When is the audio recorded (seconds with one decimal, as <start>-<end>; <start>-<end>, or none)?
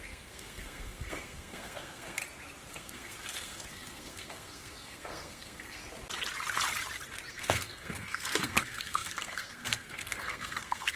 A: 2.2-2.7; 5.8-7.3